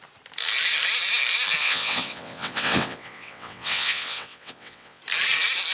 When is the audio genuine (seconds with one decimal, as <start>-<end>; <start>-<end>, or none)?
0.0-1.6; 5.0-5.7